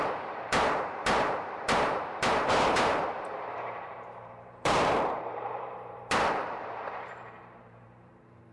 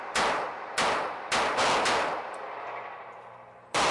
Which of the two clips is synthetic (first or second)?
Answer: first